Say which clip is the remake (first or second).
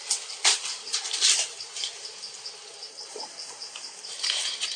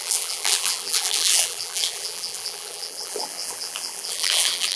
second